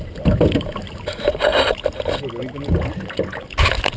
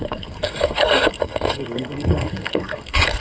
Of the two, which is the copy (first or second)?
second